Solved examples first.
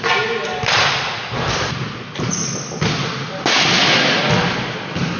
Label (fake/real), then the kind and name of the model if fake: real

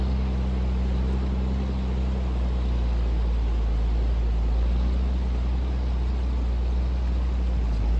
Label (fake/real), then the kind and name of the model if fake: real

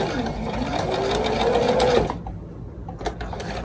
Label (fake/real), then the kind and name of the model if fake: real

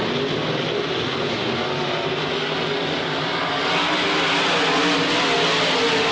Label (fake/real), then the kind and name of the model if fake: real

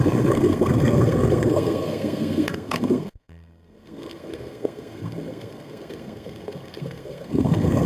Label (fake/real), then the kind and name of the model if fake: fake, codec, SNAC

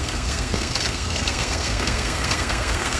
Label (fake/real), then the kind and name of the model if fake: fake, codec, SNAC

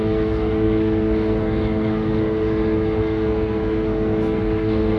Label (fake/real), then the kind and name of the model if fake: fake, codec, SNAC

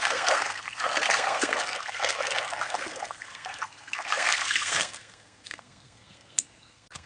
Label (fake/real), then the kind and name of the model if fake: fake, codec, SNAC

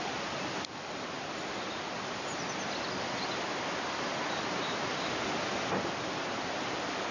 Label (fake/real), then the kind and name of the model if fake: real